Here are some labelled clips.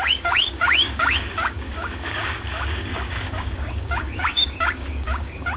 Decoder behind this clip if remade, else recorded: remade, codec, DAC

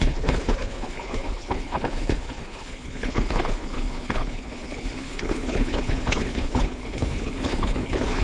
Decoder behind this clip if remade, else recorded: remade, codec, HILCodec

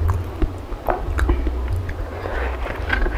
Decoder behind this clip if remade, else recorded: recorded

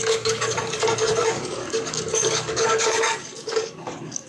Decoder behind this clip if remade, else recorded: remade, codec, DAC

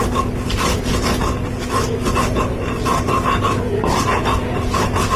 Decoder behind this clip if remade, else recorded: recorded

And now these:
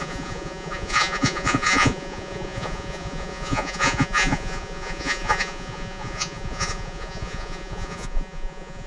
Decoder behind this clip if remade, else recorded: remade, vocoder, Vocos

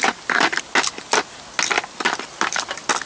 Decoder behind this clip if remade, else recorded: recorded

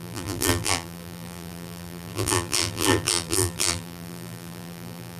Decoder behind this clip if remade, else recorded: remade, vocoder, BigVGAN v2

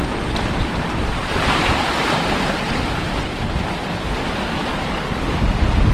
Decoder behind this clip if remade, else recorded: recorded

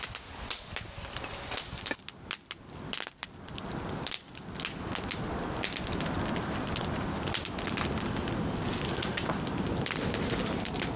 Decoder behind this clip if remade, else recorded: recorded